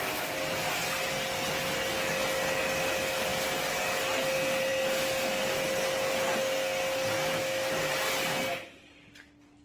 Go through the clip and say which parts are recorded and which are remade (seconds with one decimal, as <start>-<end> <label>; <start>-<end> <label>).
0.0-9.6 recorded